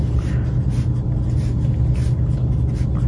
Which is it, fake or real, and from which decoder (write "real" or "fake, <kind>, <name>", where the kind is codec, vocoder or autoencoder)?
real